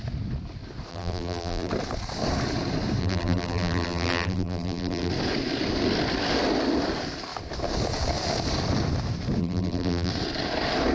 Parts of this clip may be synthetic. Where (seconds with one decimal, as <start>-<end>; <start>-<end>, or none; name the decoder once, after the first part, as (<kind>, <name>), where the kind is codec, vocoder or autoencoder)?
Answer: 0.9-1.7 (vocoder, BigVGAN v2); 3.0-5.1; 9.4-10.1